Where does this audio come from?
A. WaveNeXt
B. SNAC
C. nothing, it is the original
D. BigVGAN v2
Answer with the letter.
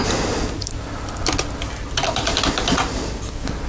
C